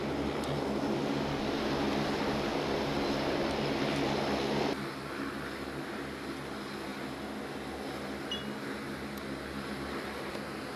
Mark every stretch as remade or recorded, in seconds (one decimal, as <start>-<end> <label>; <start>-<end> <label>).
0.0-10.8 recorded